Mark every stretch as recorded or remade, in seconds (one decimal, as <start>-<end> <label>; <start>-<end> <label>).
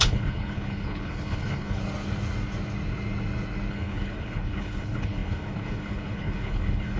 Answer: 0.0-1.8 remade; 1.8-3.7 recorded; 3.7-7.0 remade